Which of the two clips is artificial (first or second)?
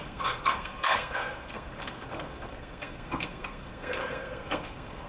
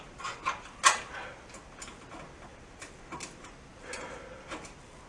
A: first